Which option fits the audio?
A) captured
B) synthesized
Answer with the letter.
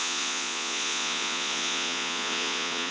B